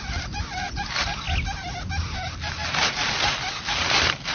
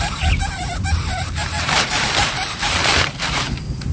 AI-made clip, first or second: second